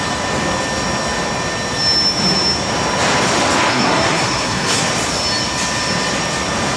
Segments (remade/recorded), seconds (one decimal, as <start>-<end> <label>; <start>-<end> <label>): 0.0-3.7 recorded; 3.7-4.8 remade; 4.8-6.8 recorded